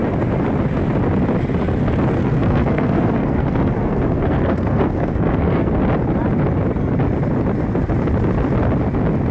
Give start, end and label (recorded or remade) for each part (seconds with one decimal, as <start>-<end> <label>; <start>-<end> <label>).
0.0-2.2 recorded; 2.2-5.7 remade; 5.7-9.3 recorded